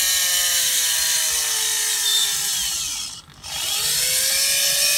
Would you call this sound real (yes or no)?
yes